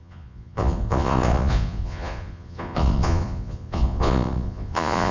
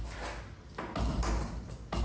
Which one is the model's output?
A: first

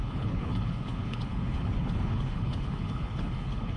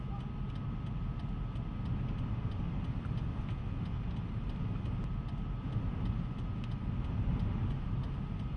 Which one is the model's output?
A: first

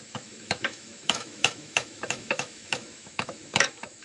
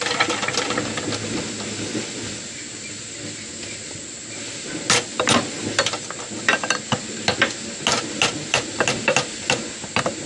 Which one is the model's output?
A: first